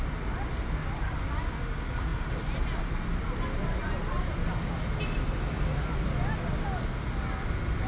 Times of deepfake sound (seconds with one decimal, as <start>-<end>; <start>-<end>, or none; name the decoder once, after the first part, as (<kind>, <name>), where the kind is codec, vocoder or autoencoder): none